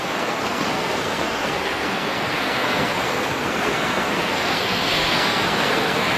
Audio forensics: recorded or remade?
remade